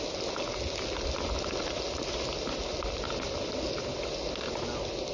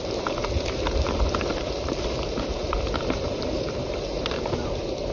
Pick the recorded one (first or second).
first